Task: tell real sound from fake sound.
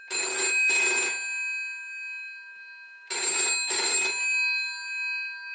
real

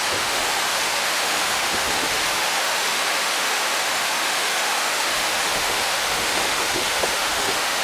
fake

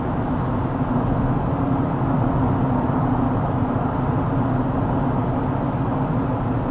real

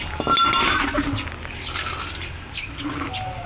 real